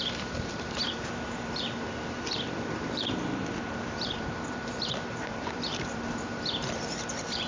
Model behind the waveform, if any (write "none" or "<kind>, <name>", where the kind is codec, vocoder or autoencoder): vocoder, BigVGAN v2